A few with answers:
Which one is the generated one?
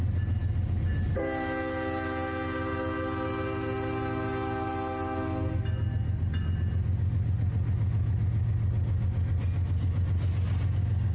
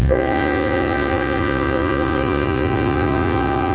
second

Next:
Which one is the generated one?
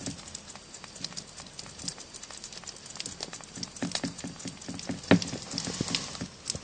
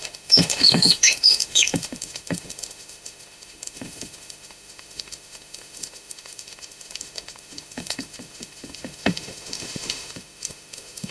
second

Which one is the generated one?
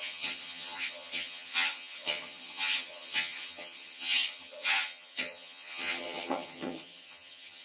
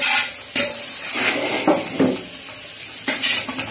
first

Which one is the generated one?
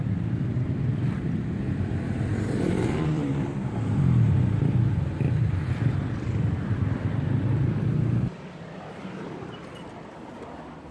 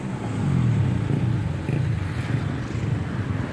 first